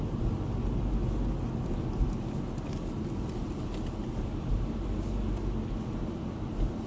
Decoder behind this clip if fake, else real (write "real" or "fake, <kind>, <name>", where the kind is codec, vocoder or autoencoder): real